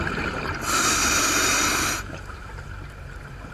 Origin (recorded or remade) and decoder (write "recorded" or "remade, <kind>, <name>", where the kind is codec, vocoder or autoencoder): remade, vocoder, BigVGAN v2